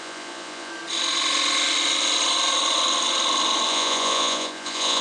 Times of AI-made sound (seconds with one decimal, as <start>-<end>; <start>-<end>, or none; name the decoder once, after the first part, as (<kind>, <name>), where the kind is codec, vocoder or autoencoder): 0.0-0.7 (vocoder, Vocos); 3.7-5.0